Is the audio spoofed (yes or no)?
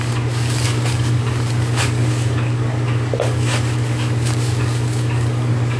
yes